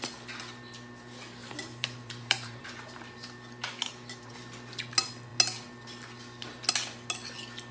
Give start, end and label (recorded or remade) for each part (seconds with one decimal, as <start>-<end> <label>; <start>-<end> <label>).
0.0-1.4 recorded; 1.4-4.4 remade; 4.4-7.7 recorded